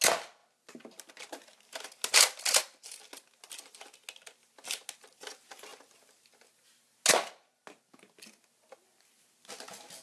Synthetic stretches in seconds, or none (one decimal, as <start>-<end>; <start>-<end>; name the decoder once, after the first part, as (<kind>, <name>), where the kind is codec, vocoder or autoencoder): none